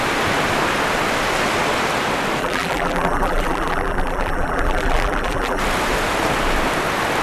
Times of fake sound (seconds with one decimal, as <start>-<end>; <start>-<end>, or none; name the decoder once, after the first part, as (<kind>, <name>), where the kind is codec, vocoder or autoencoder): 2.4-5.6 (vocoder, BigVGAN v2)